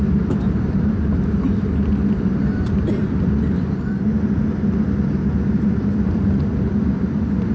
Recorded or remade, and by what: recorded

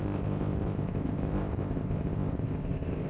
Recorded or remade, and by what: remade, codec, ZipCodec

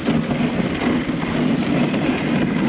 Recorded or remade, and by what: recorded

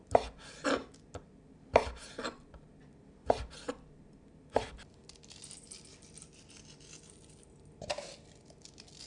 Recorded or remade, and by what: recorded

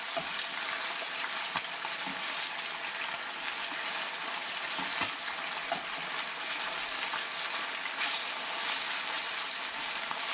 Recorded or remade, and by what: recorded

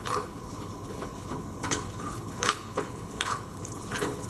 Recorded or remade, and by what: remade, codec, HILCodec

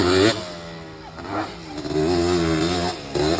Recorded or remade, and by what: recorded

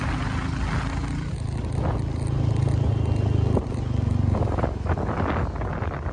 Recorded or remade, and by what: recorded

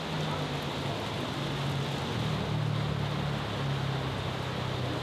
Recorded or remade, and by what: recorded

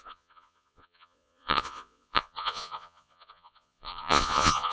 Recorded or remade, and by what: remade, vocoder, Vocos